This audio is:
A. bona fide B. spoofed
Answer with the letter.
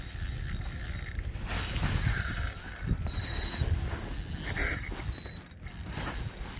A